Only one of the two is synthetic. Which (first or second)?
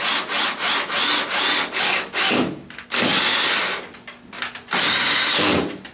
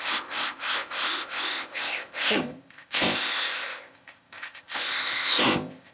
second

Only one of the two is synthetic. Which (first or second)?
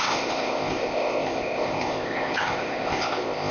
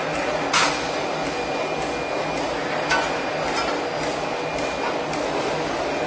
first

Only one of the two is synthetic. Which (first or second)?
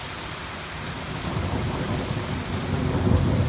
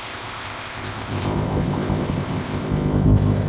second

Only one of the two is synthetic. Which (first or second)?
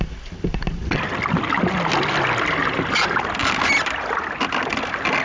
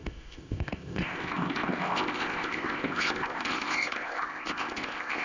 second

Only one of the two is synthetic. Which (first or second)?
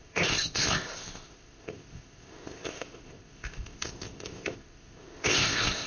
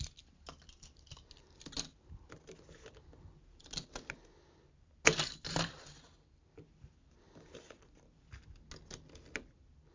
first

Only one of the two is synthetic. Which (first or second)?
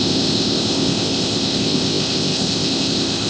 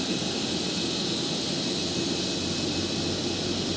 first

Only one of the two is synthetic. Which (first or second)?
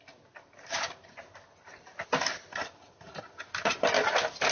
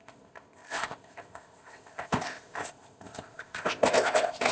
second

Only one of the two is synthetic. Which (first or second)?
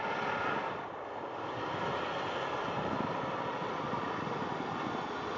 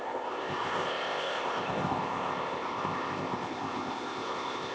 second